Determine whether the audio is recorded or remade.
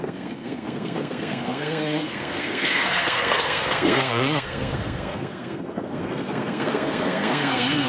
remade